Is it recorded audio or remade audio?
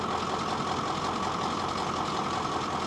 recorded